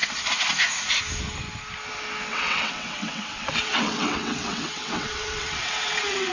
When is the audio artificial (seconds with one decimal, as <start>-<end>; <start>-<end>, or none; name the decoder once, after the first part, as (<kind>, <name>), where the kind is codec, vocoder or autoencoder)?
2.3-6.3 (vocoder, WaveNeXt)

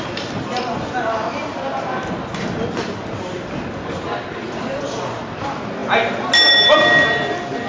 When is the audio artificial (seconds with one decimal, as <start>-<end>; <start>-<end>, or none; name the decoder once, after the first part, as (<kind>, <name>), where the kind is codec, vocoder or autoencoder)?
none

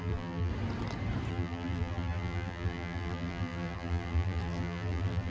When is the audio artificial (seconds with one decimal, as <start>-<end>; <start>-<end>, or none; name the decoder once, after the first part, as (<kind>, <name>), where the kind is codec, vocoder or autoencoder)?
0.0-0.5 (vocoder, BigVGAN v2); 1.3-5.3

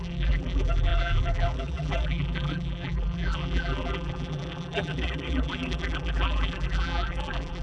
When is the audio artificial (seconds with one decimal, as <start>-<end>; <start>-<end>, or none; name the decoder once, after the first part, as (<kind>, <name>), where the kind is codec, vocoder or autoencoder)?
0.0-7.6 (vocoder, BigVGAN v2)

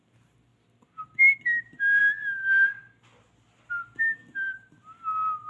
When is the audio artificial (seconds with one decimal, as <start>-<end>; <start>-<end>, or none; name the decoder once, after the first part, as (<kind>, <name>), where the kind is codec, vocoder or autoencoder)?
none

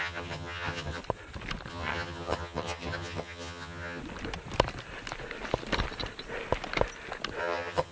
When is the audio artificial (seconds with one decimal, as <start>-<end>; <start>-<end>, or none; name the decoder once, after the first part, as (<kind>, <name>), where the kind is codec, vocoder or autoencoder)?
0.0-1.0 (vocoder, HiFi-GAN); 1.7-4.0; 7.4-7.9

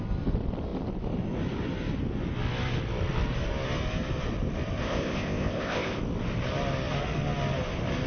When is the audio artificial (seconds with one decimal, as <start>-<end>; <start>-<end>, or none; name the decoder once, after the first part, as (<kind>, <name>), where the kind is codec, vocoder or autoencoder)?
4.8-6.0 (codec, ZipCodec)